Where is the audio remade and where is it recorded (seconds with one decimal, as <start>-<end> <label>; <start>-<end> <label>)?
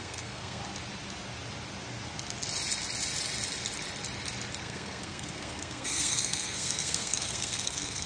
0.0-0.6 remade; 0.6-4.6 recorded; 4.6-8.1 remade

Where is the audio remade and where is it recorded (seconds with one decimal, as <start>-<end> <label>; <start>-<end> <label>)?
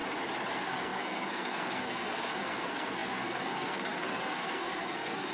0.0-0.5 recorded; 0.5-5.3 remade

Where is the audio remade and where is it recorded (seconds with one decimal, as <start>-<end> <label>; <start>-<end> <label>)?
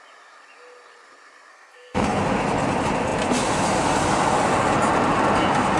0.0-1.5 recorded; 1.5-2.2 remade; 2.2-5.8 recorded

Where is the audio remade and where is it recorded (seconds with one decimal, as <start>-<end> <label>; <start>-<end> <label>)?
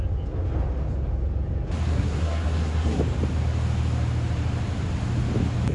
0.0-1.9 recorded; 1.9-3.0 remade; 3.0-5.7 recorded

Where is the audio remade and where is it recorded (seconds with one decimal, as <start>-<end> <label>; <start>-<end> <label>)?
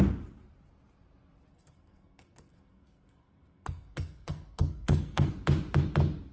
0.0-1.5 recorded; 1.5-5.3 remade; 5.3-6.3 recorded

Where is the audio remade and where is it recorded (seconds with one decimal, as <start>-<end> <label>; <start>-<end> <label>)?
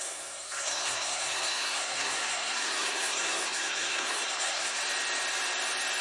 0.0-4.8 remade; 4.8-6.0 recorded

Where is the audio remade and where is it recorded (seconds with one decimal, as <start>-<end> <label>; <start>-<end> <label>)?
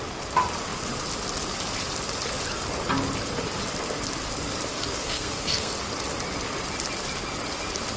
0.0-4.7 recorded; 4.7-5.7 remade; 5.7-8.0 recorded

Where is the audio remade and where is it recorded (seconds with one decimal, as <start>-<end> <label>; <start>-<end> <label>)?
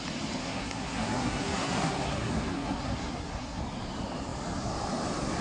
0.0-0.4 recorded; 0.4-3.6 remade; 3.6-5.4 recorded